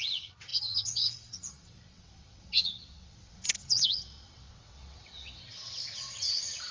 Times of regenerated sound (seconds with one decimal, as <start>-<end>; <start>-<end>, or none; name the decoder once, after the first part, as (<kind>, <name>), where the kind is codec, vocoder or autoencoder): 0.0-6.7 (vocoder, WaveNeXt)